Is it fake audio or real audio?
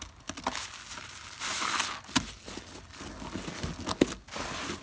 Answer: real